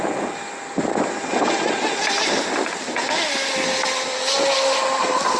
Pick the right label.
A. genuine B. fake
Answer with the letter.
A